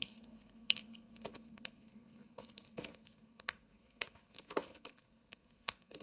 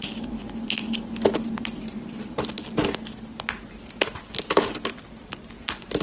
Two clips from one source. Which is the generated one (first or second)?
first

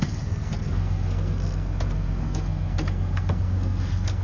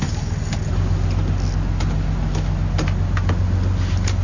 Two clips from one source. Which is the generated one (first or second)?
first